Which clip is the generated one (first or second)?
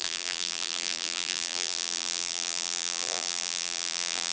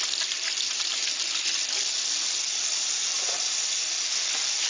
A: first